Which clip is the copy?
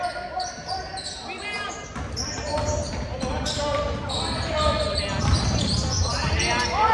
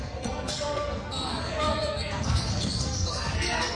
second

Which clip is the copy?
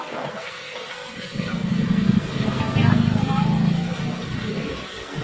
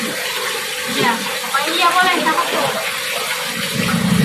first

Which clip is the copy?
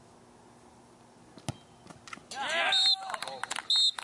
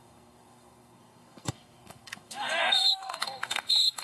second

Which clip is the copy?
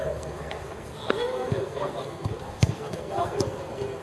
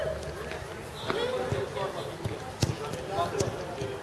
first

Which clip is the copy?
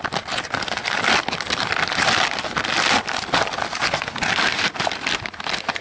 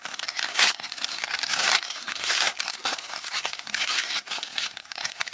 second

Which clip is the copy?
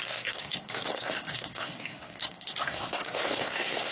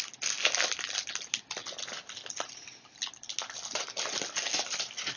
first